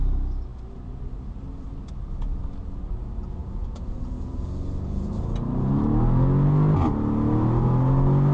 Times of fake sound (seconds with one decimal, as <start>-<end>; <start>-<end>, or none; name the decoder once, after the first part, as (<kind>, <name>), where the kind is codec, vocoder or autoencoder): 3.4-5.1 (vocoder, Vocos)